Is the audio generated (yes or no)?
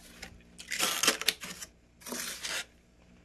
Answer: no